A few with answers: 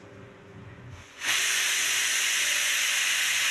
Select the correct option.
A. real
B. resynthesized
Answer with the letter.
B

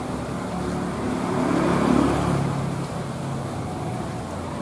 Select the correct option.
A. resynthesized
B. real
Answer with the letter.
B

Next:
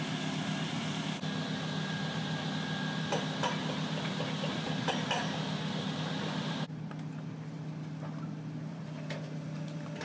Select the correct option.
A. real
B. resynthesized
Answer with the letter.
A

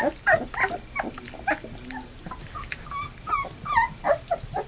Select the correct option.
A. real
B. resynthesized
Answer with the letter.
A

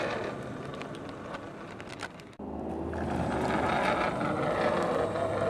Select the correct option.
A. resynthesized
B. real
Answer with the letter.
B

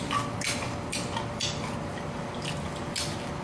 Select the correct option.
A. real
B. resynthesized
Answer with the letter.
A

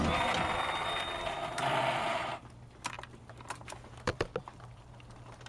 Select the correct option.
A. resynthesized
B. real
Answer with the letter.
B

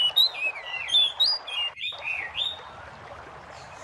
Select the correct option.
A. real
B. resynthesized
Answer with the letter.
A